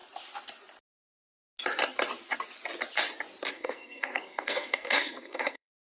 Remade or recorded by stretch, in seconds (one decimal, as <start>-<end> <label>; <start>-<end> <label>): 0.0-3.5 recorded; 3.5-5.9 remade